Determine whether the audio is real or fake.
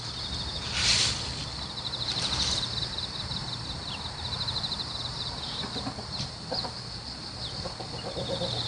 real